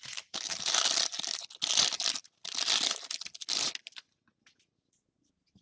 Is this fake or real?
real